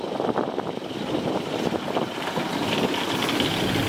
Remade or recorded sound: recorded